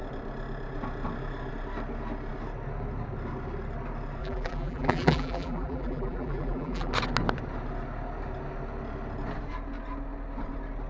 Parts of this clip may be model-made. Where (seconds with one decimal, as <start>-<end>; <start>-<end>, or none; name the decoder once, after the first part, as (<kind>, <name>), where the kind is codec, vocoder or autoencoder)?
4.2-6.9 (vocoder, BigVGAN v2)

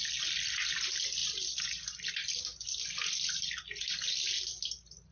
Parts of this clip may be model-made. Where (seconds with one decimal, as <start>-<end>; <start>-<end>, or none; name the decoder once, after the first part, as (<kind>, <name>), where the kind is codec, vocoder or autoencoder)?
none

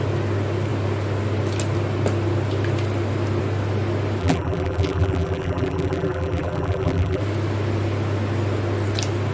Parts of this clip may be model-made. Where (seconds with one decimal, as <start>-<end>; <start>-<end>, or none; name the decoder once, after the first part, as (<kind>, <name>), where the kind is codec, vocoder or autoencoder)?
4.2-7.2 (vocoder, BigVGAN v2)